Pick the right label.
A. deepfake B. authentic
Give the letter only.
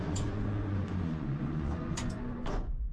A